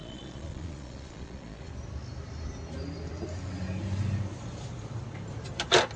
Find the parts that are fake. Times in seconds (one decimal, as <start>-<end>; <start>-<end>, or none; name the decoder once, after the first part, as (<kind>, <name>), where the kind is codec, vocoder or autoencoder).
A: 0.0-1.7 (vocoder, Vocos)